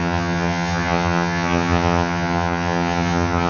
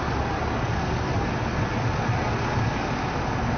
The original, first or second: second